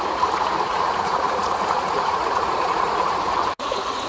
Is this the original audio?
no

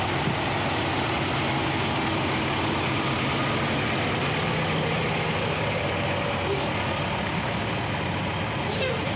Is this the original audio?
yes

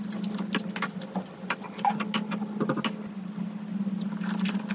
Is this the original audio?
yes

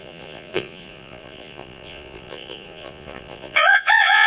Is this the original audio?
no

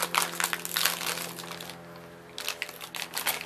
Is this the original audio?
yes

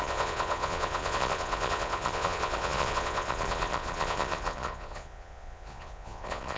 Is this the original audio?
no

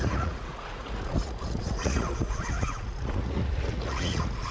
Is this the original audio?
no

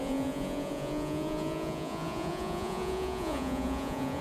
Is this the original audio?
no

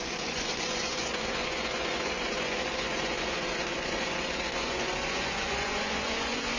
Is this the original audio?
no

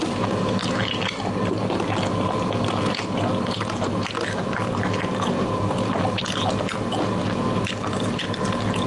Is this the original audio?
yes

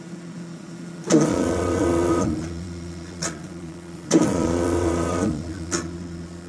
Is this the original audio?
no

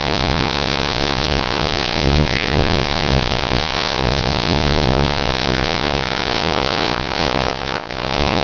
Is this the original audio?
no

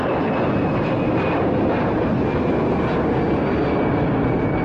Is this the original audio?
yes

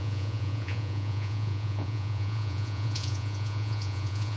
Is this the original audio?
no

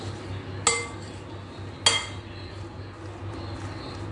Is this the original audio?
yes